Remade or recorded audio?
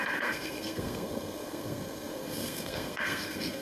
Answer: remade